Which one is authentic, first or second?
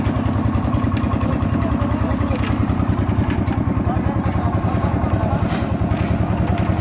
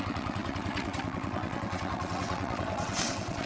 first